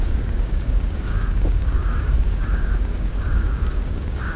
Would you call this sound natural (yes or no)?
no